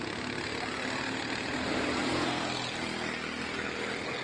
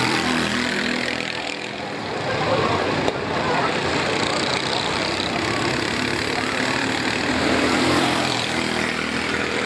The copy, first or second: second